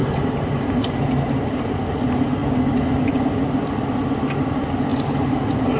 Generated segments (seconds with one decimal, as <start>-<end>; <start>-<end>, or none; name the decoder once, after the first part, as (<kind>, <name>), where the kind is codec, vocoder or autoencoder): 0.0-1.0 (vocoder, BigVGAN v2); 4.9-5.8